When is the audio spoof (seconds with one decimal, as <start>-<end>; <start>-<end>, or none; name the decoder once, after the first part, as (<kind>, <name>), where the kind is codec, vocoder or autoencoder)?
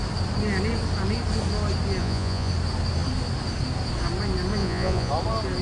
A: 2.0-2.5 (vocoder, Vocos); 4.6-5.1